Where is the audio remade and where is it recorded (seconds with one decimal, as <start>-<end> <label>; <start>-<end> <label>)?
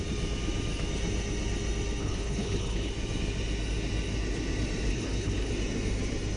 0.0-2.0 recorded; 2.0-2.9 remade; 2.9-4.9 recorded; 4.9-5.5 remade; 5.5-6.4 recorded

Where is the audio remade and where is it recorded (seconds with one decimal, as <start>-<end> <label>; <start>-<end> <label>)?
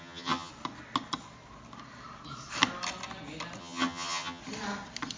0.0-0.5 remade; 0.5-3.6 recorded; 3.6-4.4 remade; 4.4-5.2 recorded